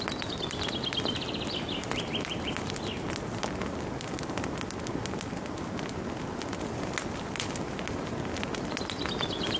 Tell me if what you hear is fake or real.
real